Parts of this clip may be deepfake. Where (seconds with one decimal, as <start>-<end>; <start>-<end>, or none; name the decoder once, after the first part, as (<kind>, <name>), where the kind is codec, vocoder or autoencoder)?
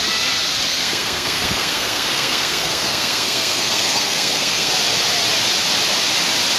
0.7-4.7 (codec, SNAC)